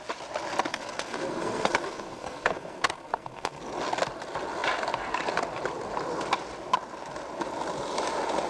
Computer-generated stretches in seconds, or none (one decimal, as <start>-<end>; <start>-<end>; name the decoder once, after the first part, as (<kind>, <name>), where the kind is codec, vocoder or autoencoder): 0.7-3.6 (codec, SNAC)